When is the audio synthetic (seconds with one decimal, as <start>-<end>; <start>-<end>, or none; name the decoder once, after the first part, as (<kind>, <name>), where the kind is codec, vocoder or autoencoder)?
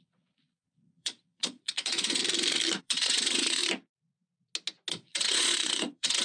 0.0-2.2 (vocoder, Vocos); 2.8-3.6; 4.9-6.2